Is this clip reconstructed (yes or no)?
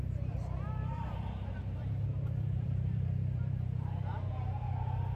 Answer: yes